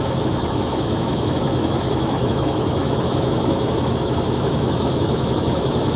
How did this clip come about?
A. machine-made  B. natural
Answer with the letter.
A